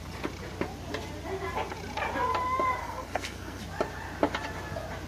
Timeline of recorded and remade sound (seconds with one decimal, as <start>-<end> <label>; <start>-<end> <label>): 0.0-2.8 recorded; 2.8-3.6 remade; 3.6-5.1 recorded